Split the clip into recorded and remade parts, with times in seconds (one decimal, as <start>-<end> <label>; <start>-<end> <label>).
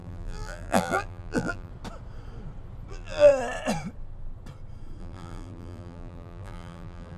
0.0-1.7 remade; 1.7-2.9 recorded; 2.9-3.3 remade; 3.3-5.0 recorded; 5.0-7.2 remade